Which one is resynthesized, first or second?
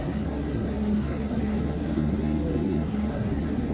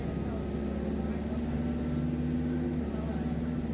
first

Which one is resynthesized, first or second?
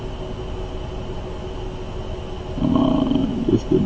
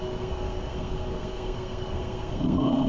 second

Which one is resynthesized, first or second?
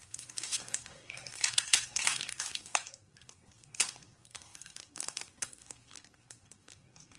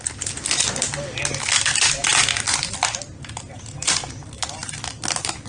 first